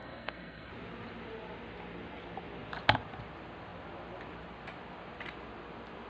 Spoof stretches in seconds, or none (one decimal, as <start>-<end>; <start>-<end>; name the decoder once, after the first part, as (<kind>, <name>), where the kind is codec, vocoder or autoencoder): 0.0-0.7 (codec, SNAC)